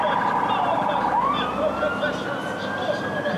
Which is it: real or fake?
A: real